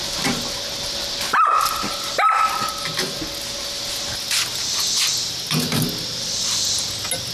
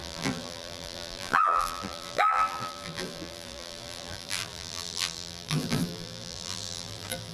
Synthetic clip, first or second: second